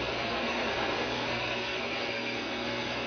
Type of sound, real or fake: fake